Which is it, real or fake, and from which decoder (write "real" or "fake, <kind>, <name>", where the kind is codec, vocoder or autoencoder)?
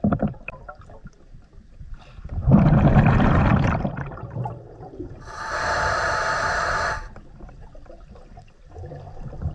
fake, vocoder, BigVGAN v2